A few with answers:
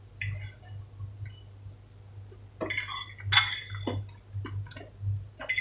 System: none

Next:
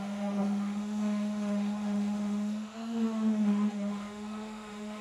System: autoencoder, DAC-VAE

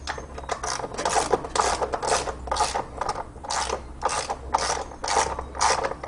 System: none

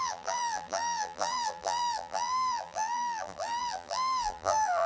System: vocoder, BigVGAN v2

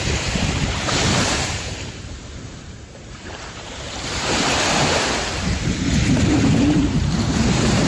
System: vocoder, BigVGAN v2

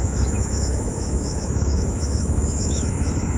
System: autoencoder, DAC-VAE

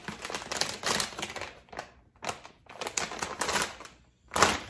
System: none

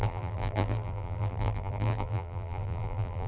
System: vocoder, BigVGAN v2